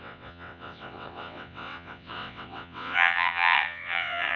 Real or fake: fake